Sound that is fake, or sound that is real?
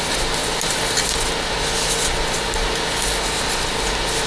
real